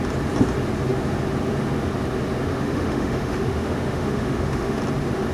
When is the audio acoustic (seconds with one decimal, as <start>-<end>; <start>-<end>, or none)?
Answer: 0.0-2.5; 4.8-5.3